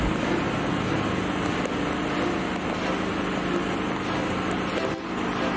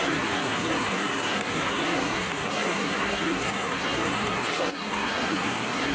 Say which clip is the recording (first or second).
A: first